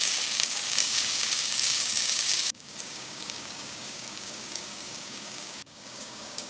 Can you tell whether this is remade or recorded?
remade